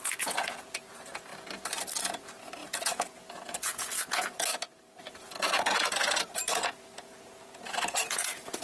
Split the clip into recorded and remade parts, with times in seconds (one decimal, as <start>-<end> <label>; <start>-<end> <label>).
0.0-1.3 remade; 1.3-2.0 recorded; 2.0-4.5 remade; 4.5-5.0 recorded; 5.0-8.6 remade